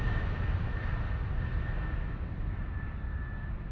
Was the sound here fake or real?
real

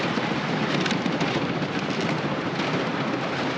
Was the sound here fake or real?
real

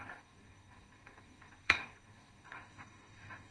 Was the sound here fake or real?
fake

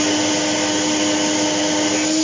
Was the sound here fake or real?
real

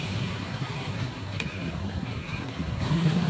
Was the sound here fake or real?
fake